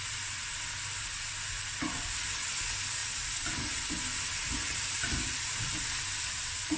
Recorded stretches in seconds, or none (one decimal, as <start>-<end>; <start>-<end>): 0.0-6.8